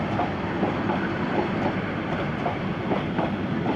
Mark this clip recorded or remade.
remade